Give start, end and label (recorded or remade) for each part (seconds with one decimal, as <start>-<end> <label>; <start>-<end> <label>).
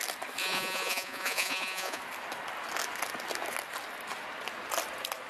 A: 0.0-0.4 recorded; 0.4-2.0 remade; 2.0-5.3 recorded